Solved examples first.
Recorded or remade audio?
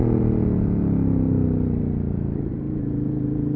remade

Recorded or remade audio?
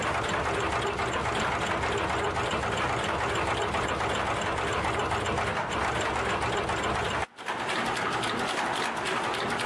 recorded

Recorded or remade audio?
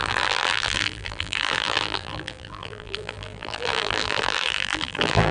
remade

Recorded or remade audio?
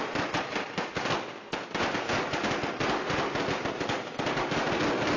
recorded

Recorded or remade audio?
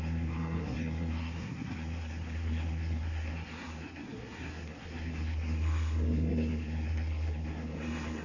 remade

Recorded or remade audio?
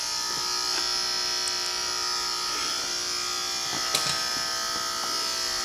recorded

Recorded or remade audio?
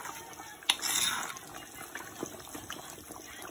recorded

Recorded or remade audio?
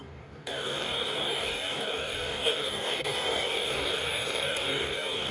remade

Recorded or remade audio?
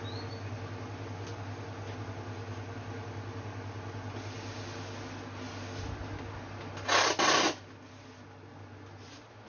recorded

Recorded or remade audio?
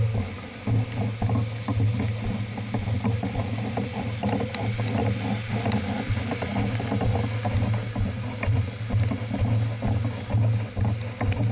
recorded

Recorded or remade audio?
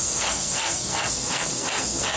remade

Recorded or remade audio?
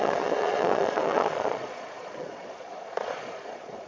remade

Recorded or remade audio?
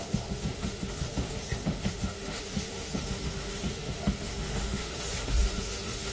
remade